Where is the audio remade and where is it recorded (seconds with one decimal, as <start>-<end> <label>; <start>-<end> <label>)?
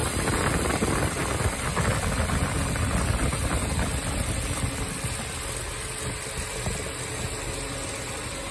0.0-8.5 recorded